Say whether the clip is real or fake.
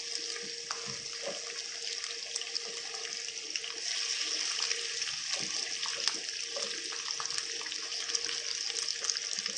real